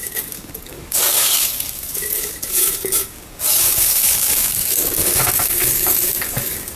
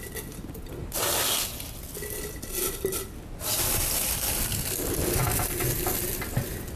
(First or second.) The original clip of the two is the second